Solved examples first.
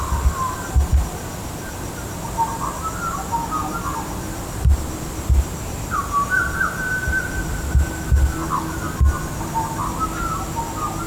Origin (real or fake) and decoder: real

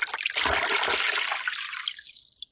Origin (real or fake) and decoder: real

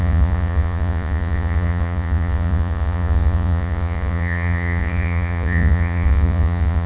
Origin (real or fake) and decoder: fake, vocoder, Vocos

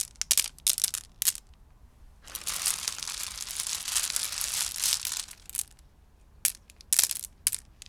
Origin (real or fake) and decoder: real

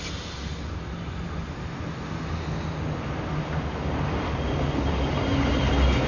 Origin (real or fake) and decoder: real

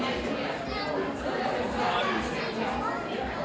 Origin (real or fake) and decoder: real